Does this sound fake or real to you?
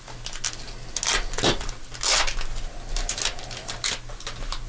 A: real